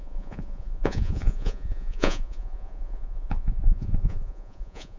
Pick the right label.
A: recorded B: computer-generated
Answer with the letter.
B